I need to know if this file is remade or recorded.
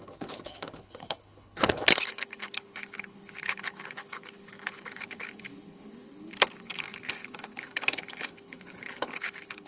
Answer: remade